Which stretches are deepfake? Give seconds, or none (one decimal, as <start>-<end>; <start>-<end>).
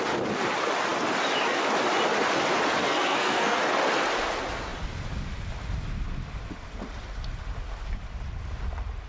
2.8-3.6